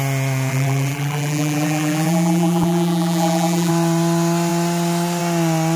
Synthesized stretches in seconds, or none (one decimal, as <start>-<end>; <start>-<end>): 0.5-3.7